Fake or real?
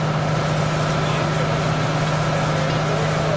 real